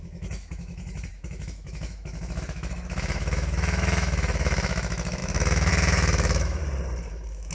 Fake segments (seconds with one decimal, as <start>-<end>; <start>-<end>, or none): 0.0-6.6; 7.1-7.5